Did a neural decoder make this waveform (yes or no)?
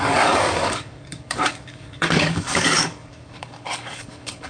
yes